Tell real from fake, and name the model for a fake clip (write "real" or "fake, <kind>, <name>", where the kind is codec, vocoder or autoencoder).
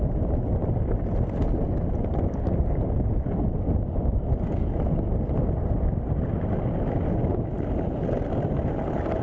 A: real